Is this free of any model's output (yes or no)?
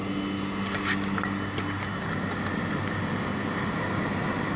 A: yes